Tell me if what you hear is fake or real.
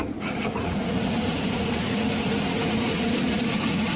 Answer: fake